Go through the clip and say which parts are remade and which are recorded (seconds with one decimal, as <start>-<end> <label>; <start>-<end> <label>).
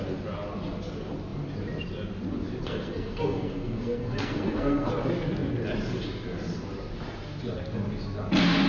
0.0-2.6 recorded; 2.6-4.9 remade; 4.9-8.7 recorded